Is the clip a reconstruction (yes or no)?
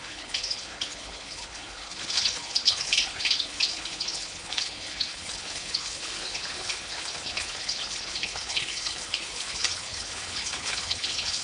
yes